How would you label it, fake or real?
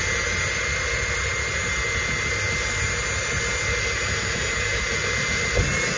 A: real